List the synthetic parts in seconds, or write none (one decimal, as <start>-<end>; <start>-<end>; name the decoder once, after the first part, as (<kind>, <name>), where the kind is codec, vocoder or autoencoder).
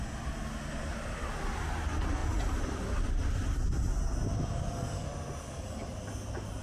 2.2-5.4 (vocoder, BigVGAN v2)